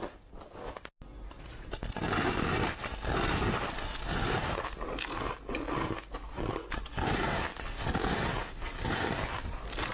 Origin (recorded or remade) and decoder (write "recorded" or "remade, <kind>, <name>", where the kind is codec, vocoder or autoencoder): recorded